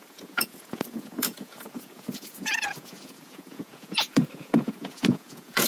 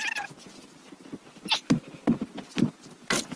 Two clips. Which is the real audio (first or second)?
second